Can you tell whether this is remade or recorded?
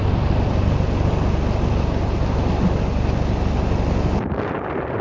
recorded